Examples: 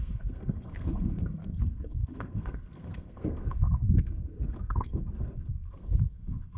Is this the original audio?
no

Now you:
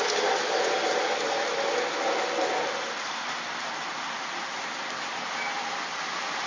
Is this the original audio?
yes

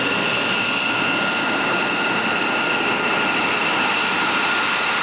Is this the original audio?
yes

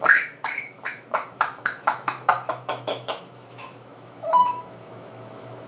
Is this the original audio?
no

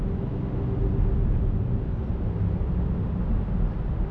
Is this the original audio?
yes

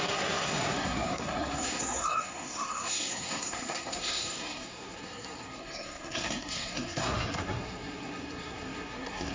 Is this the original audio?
no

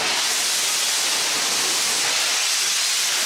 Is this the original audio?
yes